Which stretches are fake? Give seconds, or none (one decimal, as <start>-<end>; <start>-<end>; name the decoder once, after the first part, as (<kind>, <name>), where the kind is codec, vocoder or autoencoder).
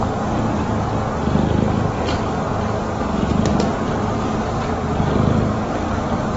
none